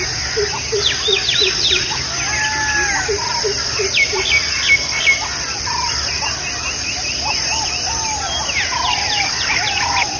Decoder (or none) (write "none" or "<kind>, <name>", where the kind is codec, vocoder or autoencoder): none